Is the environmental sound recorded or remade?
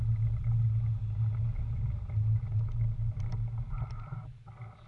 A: recorded